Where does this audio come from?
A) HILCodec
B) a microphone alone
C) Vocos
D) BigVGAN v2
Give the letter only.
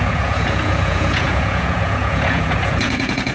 C